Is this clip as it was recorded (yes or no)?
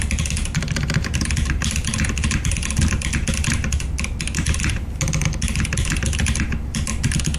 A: yes